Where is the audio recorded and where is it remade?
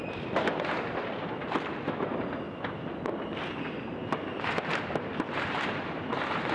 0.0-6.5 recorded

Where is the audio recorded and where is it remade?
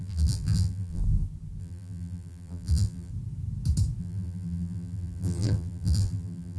0.0-1.0 remade; 1.0-1.6 recorded; 1.6-3.1 remade; 3.1-4.0 recorded; 4.0-6.6 remade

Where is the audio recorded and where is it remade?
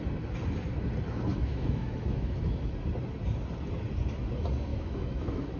0.0-1.3 recorded; 1.3-2.7 remade; 2.7-4.7 recorded; 4.7-5.6 remade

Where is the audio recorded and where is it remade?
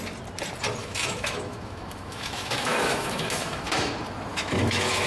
0.0-0.8 recorded; 0.8-3.9 remade; 3.9-4.3 recorded; 4.3-5.1 remade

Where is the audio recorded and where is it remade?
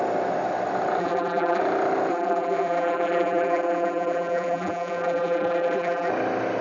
0.0-1.0 recorded; 1.0-1.6 remade; 1.6-2.1 recorded; 2.1-6.1 remade; 6.1-6.6 recorded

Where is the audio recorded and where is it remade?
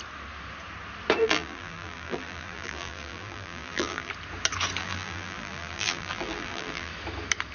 0.0-1.2 recorded; 1.2-4.1 remade; 4.1-4.8 recorded; 4.8-6.9 remade; 6.9-7.5 recorded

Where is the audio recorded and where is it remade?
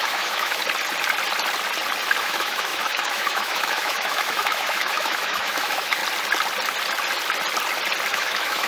0.0-0.6 remade; 0.6-2.2 recorded; 2.2-6.0 remade; 6.0-8.1 recorded; 8.1-8.7 remade